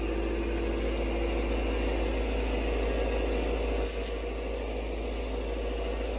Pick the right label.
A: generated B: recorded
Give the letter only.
B